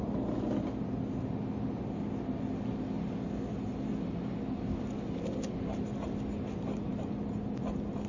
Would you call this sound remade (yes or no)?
no